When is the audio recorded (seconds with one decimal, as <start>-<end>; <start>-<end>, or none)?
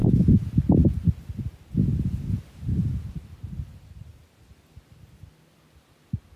0.6-1.9; 3.3-6.4